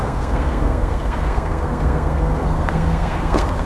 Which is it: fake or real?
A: fake